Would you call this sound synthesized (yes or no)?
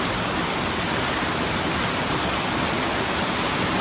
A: no